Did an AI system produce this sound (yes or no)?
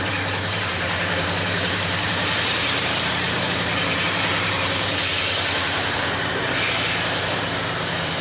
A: yes